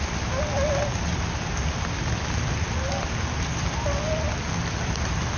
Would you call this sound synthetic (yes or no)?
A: no